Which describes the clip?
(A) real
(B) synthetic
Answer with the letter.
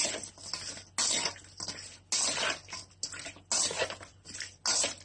A